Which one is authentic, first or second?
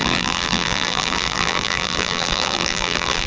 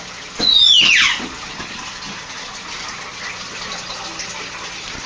second